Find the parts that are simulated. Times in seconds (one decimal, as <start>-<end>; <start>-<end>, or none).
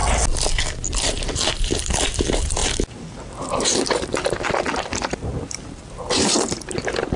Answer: 1.0-7.2